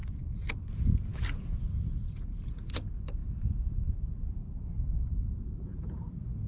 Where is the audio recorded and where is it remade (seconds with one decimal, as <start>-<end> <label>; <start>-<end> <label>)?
0.0-1.1 remade; 1.1-1.6 recorded; 1.6-6.5 remade